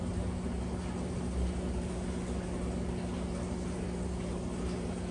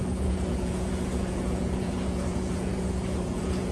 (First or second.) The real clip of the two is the first